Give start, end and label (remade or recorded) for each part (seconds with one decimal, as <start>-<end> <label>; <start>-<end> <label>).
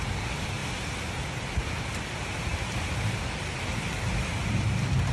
0.0-5.1 recorded